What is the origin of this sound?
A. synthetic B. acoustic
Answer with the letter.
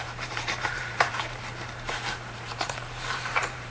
A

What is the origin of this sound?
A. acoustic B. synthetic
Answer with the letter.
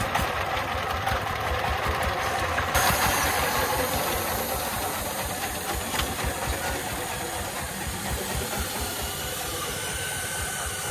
B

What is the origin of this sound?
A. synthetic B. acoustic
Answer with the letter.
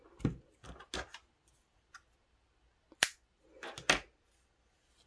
B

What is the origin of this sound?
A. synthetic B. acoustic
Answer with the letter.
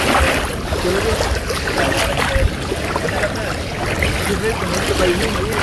B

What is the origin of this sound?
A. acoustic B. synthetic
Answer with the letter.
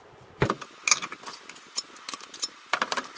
A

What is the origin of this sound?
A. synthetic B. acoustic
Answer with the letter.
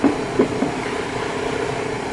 B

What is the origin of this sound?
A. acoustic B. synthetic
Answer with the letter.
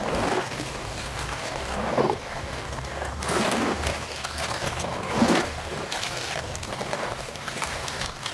B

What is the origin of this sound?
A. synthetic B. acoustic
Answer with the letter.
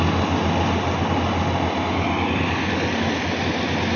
B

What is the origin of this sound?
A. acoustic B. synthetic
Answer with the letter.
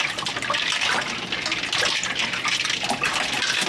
A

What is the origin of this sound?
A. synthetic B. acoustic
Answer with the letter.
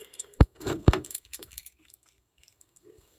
A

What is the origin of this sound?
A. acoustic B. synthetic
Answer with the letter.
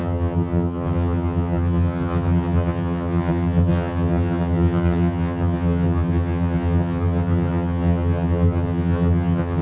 B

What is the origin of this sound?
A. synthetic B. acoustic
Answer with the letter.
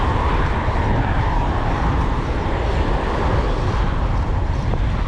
B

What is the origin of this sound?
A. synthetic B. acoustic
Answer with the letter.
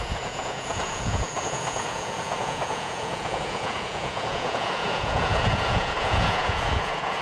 A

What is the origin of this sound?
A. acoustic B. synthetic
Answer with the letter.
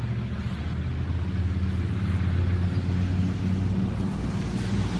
A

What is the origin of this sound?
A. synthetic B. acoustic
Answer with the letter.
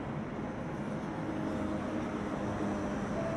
B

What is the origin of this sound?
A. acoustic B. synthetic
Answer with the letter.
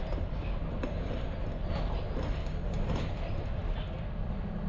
A